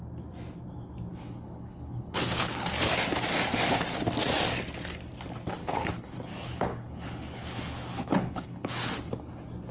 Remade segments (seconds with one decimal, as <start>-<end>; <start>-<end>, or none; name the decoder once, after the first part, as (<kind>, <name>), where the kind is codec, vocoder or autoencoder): 1.1-2.9 (codec, HILCodec); 5.6-8.9